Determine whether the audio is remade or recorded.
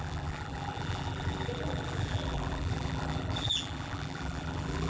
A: remade